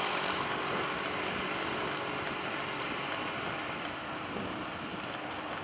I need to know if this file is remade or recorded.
recorded